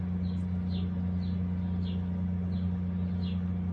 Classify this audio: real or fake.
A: real